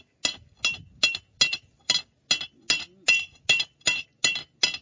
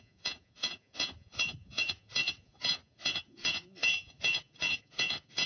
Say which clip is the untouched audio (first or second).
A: first